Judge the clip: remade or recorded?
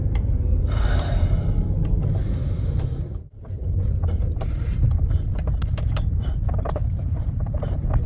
recorded